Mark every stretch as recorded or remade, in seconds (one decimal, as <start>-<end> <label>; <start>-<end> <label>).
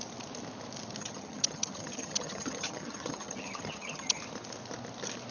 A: 0.0-1.0 recorded; 1.0-4.2 remade; 4.2-5.3 recorded